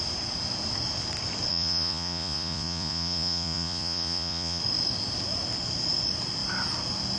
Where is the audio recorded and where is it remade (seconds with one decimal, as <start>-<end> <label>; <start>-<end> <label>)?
0.0-1.5 recorded; 1.5-4.6 remade; 4.6-7.2 recorded